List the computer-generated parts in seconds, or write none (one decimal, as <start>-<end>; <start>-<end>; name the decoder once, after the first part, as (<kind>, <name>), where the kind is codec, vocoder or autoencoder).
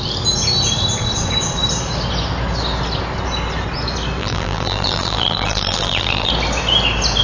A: 4.2-6.3 (vocoder, BigVGAN v2)